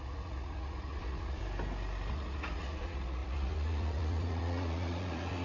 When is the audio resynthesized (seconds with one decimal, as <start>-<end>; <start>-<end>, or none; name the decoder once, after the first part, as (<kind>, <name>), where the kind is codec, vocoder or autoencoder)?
0.0-1.4 (vocoder, Vocos); 2.1-5.4